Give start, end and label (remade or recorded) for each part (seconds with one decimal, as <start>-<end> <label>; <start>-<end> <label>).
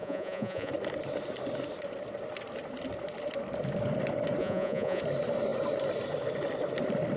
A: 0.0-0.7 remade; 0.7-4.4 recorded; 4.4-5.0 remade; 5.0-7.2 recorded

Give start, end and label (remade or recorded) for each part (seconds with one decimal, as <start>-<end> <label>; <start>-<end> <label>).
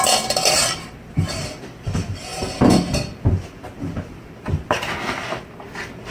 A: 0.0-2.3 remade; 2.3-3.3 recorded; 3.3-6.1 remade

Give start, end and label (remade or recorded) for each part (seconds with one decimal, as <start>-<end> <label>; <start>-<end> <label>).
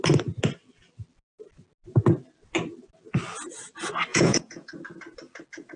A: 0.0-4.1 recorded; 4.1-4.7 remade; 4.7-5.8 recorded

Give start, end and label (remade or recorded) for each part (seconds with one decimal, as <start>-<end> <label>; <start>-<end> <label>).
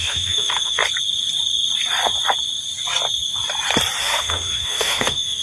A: 0.0-0.8 remade; 0.8-4.0 recorded; 4.0-5.4 remade